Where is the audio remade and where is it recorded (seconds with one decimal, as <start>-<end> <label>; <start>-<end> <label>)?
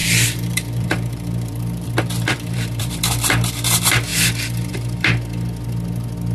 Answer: 0.0-3.5 remade; 3.5-4.1 recorded; 4.1-4.7 remade; 4.7-6.3 recorded